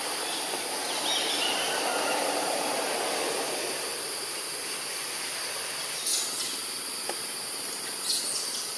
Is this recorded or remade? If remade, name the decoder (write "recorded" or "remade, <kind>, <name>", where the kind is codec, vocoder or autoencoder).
recorded